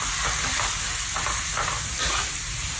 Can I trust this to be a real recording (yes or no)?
yes